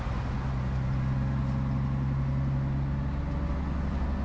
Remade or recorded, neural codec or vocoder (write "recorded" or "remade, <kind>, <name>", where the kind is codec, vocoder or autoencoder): recorded